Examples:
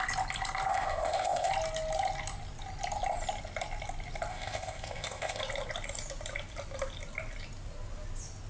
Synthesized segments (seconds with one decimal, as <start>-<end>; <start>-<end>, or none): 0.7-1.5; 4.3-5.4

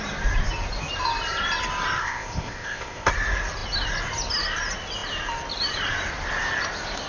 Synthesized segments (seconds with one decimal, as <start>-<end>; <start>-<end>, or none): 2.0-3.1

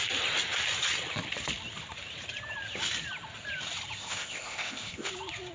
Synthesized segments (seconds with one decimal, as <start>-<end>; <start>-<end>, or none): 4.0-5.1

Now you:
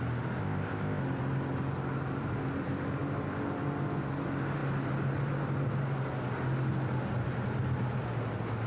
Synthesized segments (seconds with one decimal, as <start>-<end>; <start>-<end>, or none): 0.4-1.0